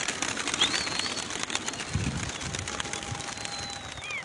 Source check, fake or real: real